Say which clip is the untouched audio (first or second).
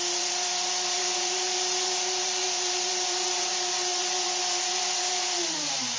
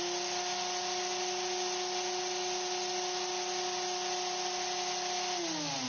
second